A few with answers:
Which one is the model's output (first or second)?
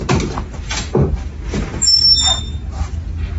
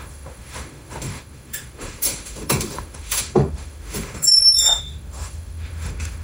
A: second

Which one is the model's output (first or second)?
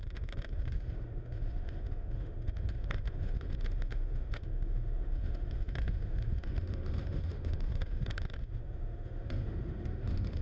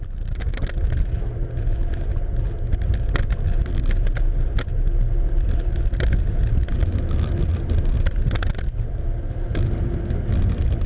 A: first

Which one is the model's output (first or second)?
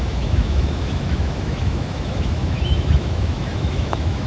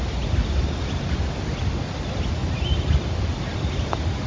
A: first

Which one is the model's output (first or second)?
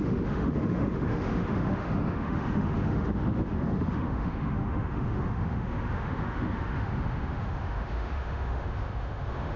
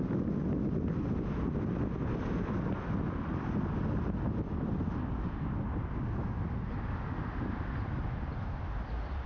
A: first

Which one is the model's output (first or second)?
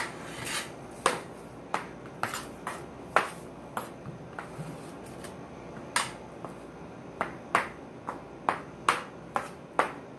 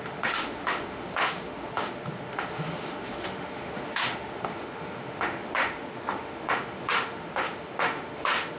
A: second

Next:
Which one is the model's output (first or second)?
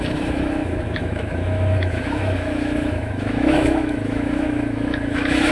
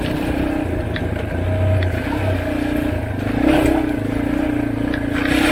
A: first